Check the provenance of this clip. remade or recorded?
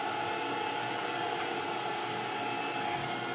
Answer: recorded